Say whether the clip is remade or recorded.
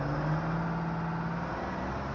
recorded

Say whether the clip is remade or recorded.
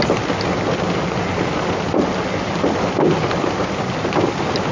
recorded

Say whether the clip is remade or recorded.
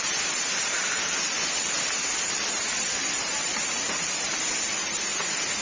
remade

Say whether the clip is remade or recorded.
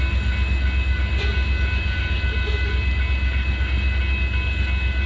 recorded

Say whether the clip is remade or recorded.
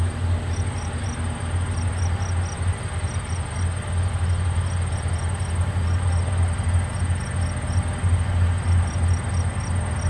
recorded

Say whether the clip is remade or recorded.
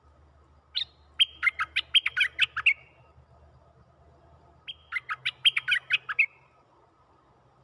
recorded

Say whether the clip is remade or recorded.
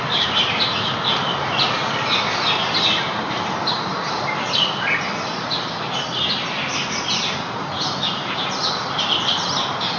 recorded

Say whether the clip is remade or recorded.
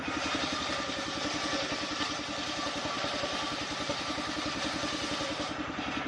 remade